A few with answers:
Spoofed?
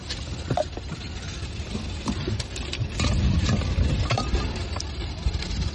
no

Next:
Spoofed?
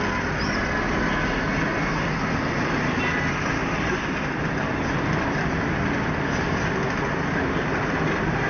no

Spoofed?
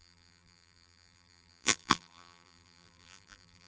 yes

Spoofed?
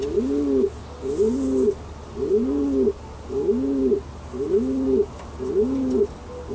no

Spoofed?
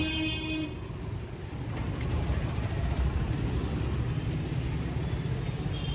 no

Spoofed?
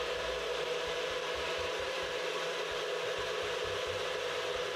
no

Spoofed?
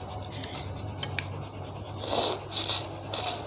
no